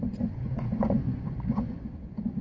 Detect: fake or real fake